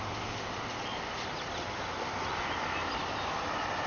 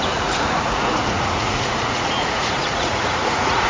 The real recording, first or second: first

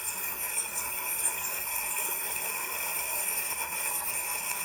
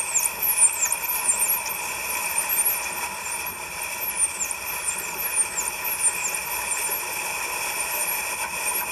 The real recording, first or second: second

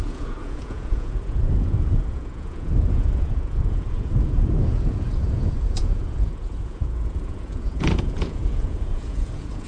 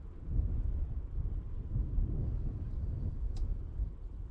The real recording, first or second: second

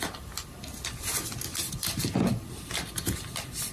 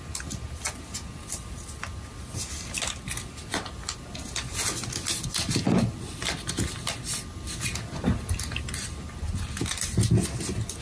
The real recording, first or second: second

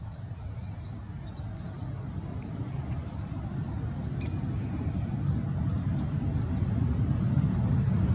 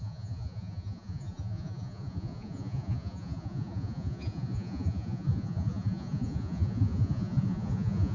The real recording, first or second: first